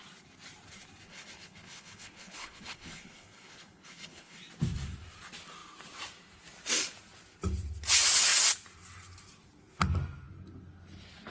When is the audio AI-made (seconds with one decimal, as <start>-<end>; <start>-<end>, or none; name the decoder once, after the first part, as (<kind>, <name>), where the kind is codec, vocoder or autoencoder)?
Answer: 1.1-4.4 (codec, HILCodec)